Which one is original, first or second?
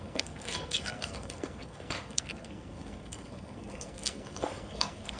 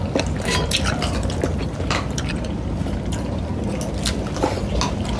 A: second